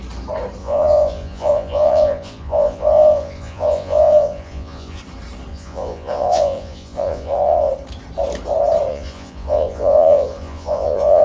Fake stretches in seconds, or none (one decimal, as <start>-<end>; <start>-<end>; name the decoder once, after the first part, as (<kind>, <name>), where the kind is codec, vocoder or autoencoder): 0.6-5.0 (vocoder, Vocos); 5.5-7.7; 8.9-11.2